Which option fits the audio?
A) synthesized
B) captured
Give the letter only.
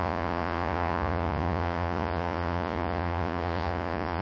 A